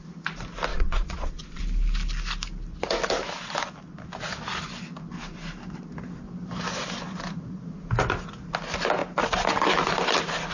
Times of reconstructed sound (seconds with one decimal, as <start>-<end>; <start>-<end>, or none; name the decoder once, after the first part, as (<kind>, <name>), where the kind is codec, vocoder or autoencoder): 0.7-1.6 (vocoder, Vocos)